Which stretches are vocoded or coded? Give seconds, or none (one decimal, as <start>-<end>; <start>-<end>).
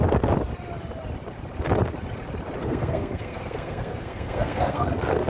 2.6-5.3